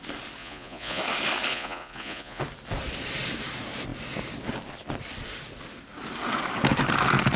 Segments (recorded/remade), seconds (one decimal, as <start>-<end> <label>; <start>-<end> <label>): 0.0-0.4 recorded; 0.4-1.0 remade; 1.0-1.5 recorded; 1.5-2.4 remade; 2.4-7.4 recorded